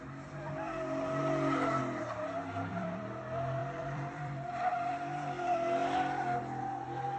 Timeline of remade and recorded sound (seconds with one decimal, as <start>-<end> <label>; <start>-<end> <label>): 0.0-2.7 recorded; 2.7-3.2 remade; 3.2-3.6 recorded; 3.6-4.5 remade; 4.5-7.2 recorded